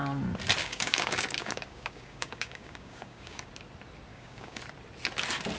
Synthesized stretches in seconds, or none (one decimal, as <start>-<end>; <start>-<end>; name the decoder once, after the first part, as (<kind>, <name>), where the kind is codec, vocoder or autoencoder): 0.6-3.5 (codec, DAC); 4.1-4.6